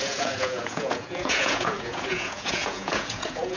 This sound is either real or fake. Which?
fake